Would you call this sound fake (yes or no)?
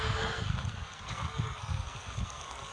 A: yes